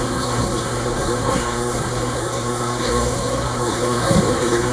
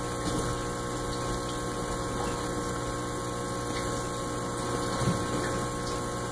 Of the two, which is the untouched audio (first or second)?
second